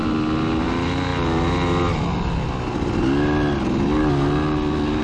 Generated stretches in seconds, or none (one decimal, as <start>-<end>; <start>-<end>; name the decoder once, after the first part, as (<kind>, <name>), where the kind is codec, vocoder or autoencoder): none

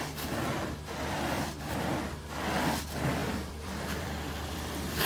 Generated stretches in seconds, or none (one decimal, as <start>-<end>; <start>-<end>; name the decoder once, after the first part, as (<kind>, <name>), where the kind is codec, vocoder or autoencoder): 3.2-5.0 (vocoder, BigVGAN v2)

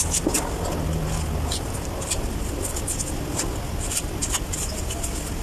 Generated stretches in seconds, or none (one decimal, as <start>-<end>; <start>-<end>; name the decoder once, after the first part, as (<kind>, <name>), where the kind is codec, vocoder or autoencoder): 4.2-4.8 (vocoder, BigVGAN v2)

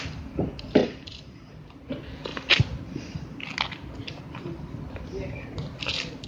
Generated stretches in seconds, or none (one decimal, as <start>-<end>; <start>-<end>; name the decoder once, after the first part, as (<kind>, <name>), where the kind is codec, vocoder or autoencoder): 0.8-1.9 (vocoder, BigVGAN v2)

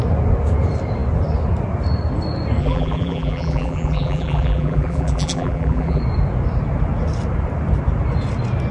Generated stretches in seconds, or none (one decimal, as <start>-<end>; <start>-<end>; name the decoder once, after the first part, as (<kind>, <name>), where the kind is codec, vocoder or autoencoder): 2.6-6.0 (vocoder, BigVGAN v2)